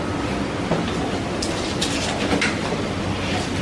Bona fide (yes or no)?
yes